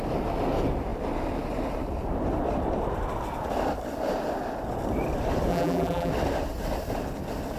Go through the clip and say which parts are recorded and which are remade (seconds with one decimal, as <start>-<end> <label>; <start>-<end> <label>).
0.0-5.5 recorded; 5.5-6.1 remade; 6.1-7.6 recorded